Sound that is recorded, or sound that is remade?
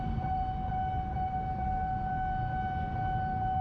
recorded